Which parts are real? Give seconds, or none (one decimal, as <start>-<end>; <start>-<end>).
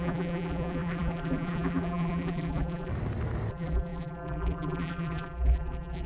2.9-3.5